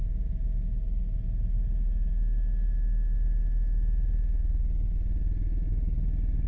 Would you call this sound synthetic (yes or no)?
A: no